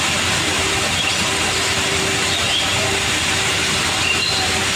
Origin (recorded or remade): remade